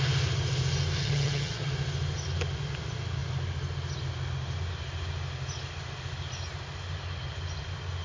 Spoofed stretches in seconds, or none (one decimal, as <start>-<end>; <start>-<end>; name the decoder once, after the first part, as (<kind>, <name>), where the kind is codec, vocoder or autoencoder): 1.0-1.7 (vocoder, HiFi-GAN)